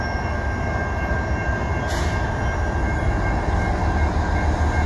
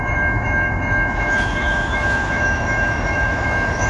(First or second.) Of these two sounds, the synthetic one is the second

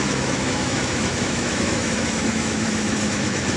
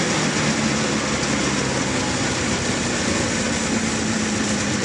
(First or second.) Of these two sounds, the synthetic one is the first